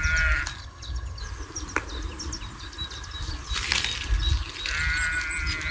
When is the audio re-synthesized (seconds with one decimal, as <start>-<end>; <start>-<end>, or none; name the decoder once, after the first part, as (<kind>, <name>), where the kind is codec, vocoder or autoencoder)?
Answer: 0.6-1.2 (vocoder, HiFi-GAN)

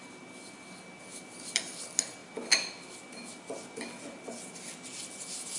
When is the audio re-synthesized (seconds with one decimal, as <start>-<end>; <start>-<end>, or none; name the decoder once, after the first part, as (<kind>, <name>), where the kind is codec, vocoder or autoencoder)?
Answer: none

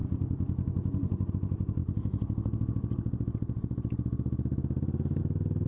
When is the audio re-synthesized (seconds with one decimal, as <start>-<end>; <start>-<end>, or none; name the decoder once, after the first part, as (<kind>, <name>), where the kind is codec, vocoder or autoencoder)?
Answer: 1.3-1.8 (autoencoder, DAC-VAE); 5.2-5.7

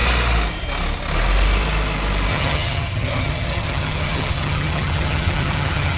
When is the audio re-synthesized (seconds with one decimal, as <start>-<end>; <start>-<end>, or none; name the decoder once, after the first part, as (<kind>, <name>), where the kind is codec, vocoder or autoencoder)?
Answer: 2.3-6.0 (vocoder, HiFi-GAN)

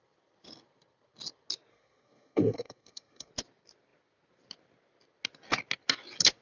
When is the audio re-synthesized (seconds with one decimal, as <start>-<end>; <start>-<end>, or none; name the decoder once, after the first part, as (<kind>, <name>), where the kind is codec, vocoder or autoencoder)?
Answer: 1.7-3.3 (codec, SNAC)

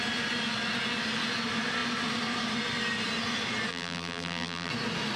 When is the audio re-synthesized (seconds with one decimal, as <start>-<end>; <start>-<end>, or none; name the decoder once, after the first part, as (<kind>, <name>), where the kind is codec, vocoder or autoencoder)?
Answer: 3.7-4.7 (vocoder, BigVGAN v2)

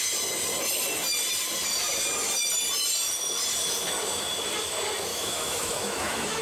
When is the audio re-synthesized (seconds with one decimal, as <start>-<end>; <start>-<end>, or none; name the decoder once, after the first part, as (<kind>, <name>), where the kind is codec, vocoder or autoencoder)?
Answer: 5.1-6.4 (autoencoder, DAC-VAE)

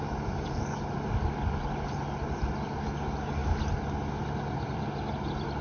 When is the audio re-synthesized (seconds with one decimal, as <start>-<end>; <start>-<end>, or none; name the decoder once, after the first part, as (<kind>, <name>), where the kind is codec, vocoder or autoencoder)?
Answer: none